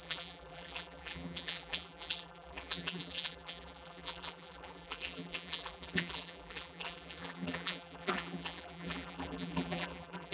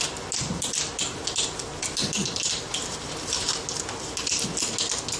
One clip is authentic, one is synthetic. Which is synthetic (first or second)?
first